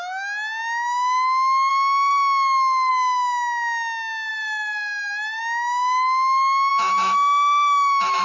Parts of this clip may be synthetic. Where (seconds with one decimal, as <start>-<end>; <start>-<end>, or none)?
1.7-2.9; 4.3-5.4; 6.7-8.2